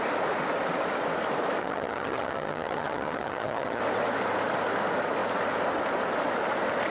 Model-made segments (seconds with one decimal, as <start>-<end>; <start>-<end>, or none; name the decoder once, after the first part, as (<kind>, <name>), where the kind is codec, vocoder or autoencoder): 1.6-3.8 (vocoder, HiFi-GAN)